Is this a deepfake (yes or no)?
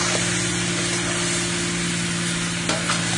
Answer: no